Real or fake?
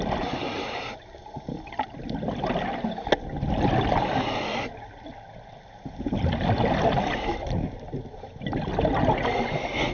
real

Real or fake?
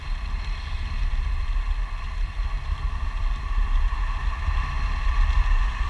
real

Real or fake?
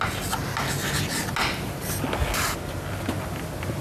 real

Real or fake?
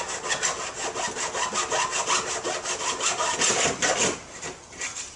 real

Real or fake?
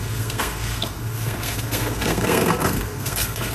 fake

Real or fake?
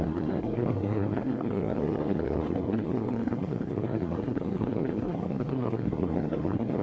fake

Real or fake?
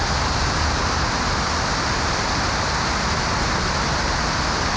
real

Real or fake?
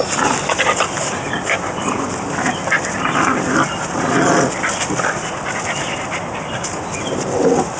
real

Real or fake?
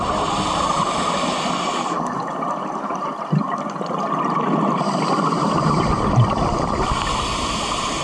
real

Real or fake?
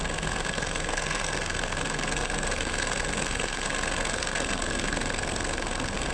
fake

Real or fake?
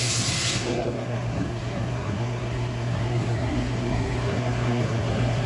fake